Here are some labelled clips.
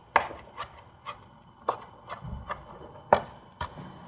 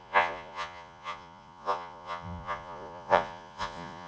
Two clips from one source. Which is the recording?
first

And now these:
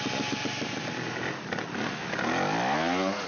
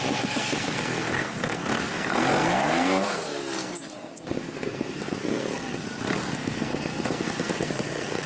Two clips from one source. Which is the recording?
first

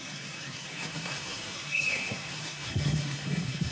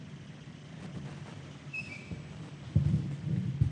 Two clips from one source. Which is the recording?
second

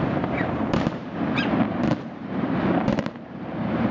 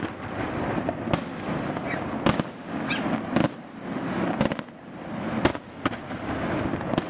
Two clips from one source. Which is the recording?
second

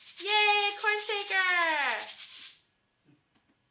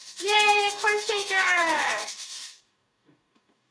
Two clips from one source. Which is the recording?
first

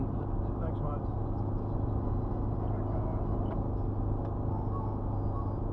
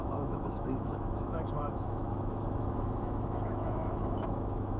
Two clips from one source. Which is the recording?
first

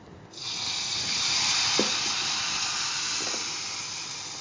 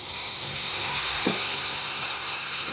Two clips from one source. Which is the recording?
first